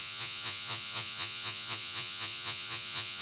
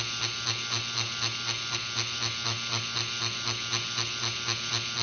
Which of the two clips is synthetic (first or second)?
first